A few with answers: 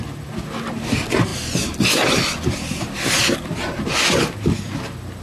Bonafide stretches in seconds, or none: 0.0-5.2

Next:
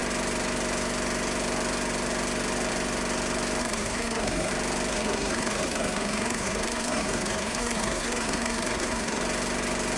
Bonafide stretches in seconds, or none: 0.0-3.6; 4.5-4.9; 9.2-10.0

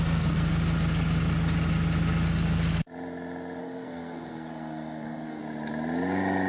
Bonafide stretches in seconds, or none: 0.5-3.6; 5.4-6.5

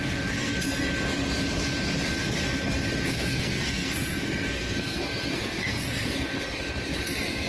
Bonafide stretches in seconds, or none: 0.7-3.1; 6.3-7.0